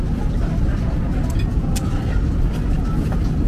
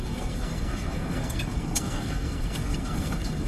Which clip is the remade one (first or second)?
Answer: second